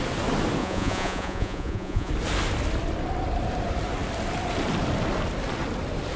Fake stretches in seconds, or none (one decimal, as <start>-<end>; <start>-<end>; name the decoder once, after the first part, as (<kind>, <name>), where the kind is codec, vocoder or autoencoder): 0.6-2.1 (vocoder, Vocos)